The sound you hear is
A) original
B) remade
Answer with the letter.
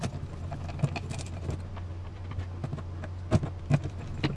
A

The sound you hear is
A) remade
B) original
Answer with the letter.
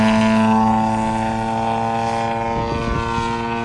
B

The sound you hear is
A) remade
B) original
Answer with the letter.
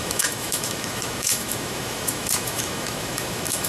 A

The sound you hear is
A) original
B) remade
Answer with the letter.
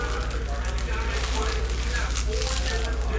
A